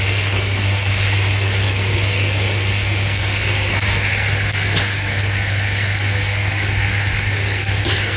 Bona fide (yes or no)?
no